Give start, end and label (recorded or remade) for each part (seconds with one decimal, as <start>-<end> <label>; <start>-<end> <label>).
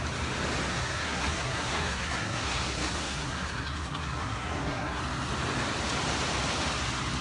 0.0-0.7 recorded; 0.7-5.0 remade; 5.0-7.2 recorded